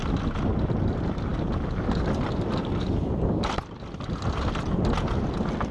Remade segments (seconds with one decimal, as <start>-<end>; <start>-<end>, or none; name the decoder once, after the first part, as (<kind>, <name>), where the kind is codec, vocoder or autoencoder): none